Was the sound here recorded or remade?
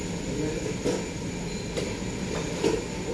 recorded